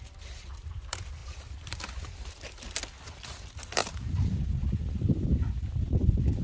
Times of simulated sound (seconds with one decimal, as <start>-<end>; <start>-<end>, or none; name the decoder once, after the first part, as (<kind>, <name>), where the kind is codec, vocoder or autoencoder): 1.2-1.9 (vocoder, BigVGAN v2); 3.8-4.4